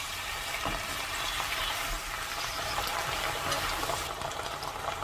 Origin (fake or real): real